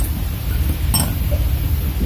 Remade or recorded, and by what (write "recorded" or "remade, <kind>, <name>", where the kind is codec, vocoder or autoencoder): recorded